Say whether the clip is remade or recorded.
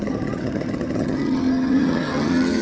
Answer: remade